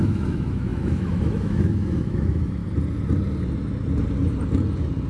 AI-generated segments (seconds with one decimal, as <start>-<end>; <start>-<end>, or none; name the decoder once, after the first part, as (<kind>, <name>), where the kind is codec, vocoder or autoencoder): 0.0-2.6 (autoencoder, DAC-VAE)